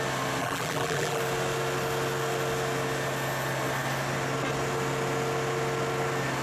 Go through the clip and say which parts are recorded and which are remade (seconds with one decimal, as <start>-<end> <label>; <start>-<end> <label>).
0.0-0.4 recorded; 0.4-1.2 remade; 1.2-6.4 recorded